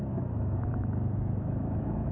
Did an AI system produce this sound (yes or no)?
yes